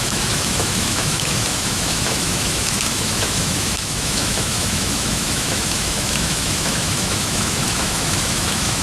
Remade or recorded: remade